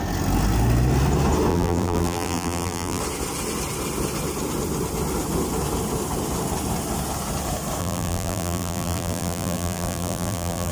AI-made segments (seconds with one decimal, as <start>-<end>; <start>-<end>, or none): 1.5-3.0; 7.8-10.7